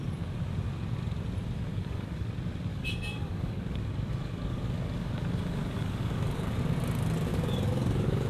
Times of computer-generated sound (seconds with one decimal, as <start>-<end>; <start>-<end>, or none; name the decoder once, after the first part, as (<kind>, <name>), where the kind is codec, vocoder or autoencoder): 1.7-2.3 (codec, DAC); 2.7-6.6; 7.3-8.3